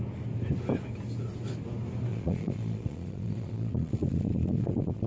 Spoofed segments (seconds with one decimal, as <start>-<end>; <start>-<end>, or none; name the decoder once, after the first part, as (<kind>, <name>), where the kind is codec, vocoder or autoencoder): 2.1-5.1 (vocoder, Vocos)